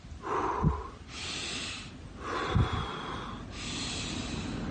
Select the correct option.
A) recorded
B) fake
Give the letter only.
A